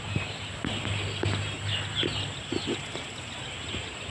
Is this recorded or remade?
recorded